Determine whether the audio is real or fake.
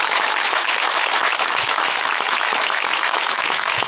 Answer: fake